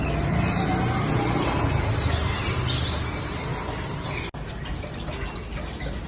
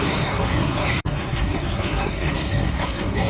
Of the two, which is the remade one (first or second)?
second